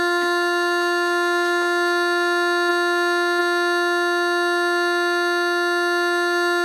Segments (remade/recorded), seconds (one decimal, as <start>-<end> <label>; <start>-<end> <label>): 0.0-6.6 recorded